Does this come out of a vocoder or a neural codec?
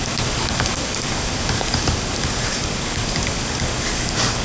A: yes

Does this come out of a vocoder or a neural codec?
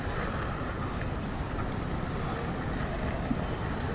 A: no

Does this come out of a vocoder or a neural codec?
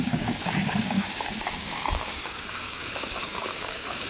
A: yes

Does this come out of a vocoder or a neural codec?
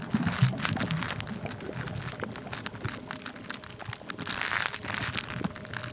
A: no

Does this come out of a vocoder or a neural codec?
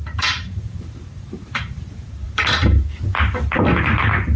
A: yes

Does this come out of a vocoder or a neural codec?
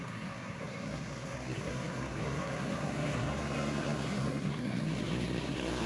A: yes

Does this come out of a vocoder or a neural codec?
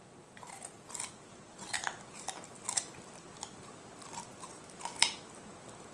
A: no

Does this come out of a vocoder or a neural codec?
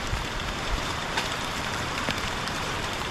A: yes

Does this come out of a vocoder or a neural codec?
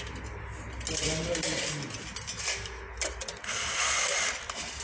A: no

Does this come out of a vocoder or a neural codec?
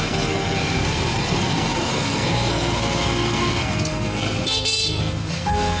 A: yes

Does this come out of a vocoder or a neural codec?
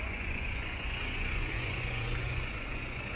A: yes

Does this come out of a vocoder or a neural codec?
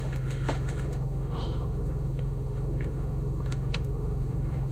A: yes